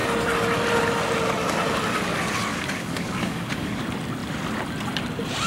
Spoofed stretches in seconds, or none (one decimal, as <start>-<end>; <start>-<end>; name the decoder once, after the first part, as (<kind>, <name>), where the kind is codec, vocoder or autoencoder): 2.5-3.8 (codec, DAC)